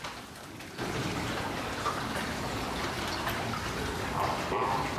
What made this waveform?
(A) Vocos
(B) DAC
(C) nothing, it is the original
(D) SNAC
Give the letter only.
C